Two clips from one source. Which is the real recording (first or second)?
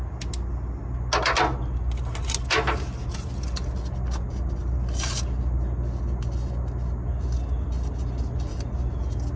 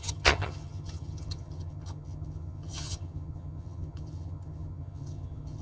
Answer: first